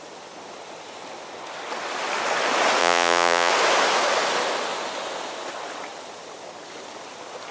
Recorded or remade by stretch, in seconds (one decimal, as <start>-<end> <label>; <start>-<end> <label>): 0.0-2.8 recorded; 2.8-3.5 remade; 3.5-7.5 recorded